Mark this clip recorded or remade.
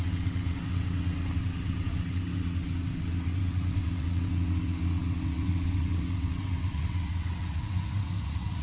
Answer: remade